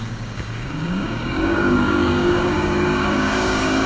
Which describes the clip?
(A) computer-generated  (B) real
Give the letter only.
A